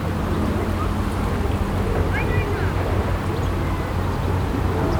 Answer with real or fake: real